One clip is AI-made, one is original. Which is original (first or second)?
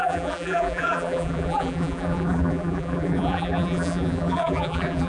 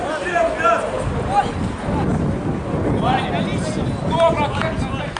second